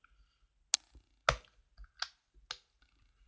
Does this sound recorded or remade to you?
recorded